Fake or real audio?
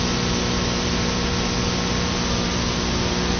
real